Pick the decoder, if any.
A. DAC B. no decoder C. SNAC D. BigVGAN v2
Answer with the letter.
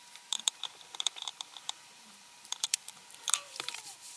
D